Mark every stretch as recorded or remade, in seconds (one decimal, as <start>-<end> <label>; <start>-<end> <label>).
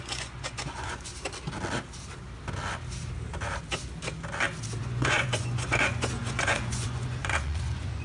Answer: 0.0-1.1 remade; 1.1-4.8 recorded; 4.8-8.0 remade